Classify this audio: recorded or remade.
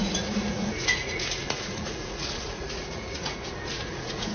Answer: remade